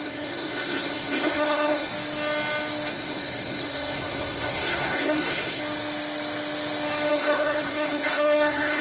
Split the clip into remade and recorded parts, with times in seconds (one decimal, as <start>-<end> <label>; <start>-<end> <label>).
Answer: 0.0-1.9 remade; 1.9-2.9 recorded; 2.9-5.6 remade; 5.6-7.1 recorded; 7.1-8.8 remade